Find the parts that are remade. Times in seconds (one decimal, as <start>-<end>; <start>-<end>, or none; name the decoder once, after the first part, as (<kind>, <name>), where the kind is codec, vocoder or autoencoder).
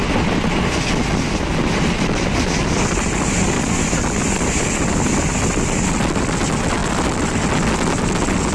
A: none